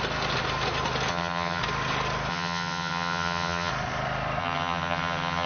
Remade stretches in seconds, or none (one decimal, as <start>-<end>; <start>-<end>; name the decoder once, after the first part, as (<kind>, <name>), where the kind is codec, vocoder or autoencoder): 1.1-1.6 (vocoder, HiFi-GAN); 2.3-3.7; 4.4-5.5